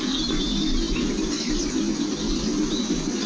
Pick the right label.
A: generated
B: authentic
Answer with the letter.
B